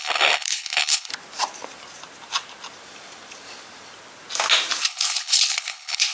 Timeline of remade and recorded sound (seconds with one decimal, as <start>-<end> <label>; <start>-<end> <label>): 0.0-1.1 remade; 1.1-4.8 recorded; 4.8-6.1 remade